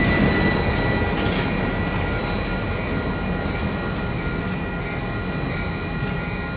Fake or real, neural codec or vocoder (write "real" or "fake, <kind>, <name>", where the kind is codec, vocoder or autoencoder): real